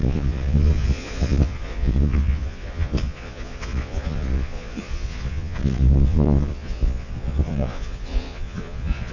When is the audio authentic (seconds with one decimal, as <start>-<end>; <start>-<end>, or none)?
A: none